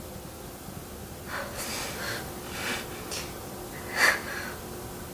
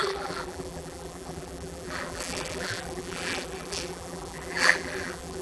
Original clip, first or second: first